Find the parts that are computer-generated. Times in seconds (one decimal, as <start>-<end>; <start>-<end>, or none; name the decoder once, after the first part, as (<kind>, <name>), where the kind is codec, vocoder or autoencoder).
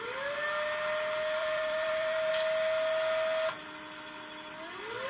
1.4-2.3 (vocoder, BigVGAN v2)